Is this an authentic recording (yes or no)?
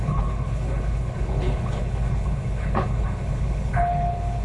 no